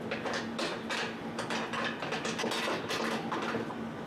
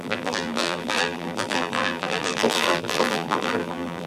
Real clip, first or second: first